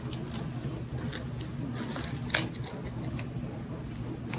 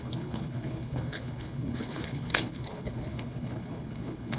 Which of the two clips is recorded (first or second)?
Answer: first